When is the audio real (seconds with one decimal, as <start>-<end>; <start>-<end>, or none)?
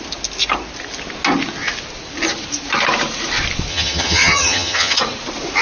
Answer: 0.0-3.7; 5.0-5.6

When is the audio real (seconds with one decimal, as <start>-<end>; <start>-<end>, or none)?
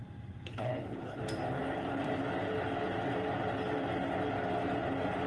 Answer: 0.0-0.5; 1.2-5.3